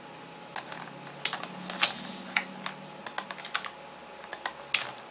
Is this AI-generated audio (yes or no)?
no